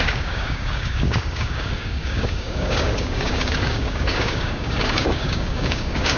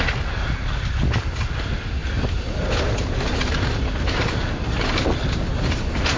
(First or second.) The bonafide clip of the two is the second